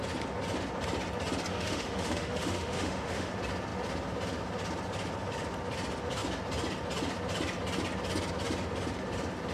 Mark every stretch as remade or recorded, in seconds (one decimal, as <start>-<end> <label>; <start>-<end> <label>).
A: 0.0-1.5 recorded; 1.5-3.3 remade; 3.3-9.5 recorded